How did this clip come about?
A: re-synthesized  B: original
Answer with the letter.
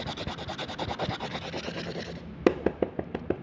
B